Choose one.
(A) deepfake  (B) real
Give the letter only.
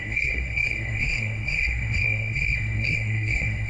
A